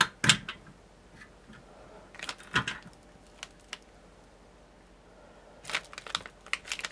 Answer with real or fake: real